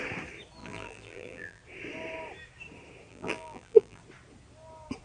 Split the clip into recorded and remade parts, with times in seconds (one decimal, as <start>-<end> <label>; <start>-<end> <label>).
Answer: 0.0-0.6 recorded; 0.6-1.6 remade; 1.6-3.1 recorded; 3.1-4.0 remade; 4.0-5.0 recorded